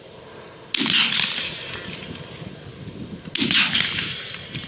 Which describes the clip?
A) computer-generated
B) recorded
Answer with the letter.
B